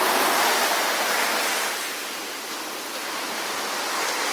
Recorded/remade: recorded